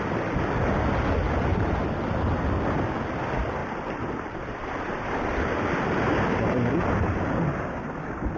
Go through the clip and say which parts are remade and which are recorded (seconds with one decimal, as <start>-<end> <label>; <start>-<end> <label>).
0.0-1.5 recorded; 1.5-2.2 remade; 2.2-3.6 recorded; 3.6-6.9 remade; 6.9-8.4 recorded